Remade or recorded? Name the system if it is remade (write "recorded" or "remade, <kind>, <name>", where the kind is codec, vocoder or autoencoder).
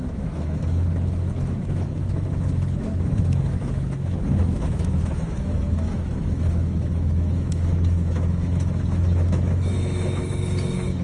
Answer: remade, autoencoder, DAC-VAE